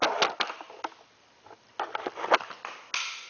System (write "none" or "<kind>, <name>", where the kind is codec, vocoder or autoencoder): none